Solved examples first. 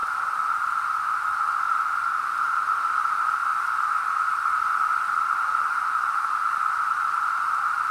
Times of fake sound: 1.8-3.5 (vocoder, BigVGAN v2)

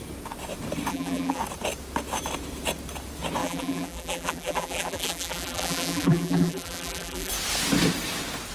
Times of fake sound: 0.9-1.4 (vocoder, BigVGAN v2); 3.4-7.3

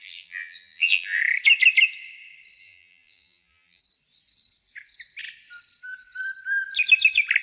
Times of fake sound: 0.0-1.2 (vocoder, BigVGAN v2); 2.6-3.8

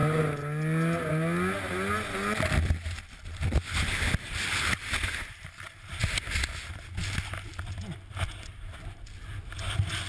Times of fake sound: none

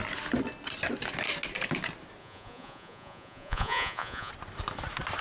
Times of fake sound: 2.2-4.3 (vocoder, Vocos)